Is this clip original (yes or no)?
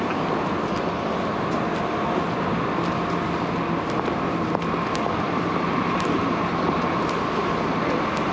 yes